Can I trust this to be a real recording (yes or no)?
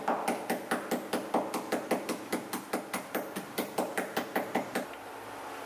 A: yes